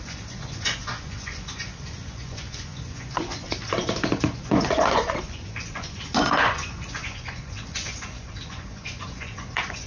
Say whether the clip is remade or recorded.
remade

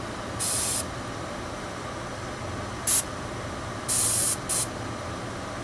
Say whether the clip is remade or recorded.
recorded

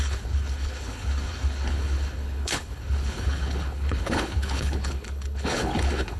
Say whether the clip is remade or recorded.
remade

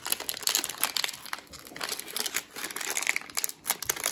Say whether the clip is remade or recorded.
recorded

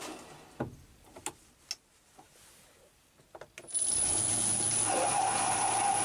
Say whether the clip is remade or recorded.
recorded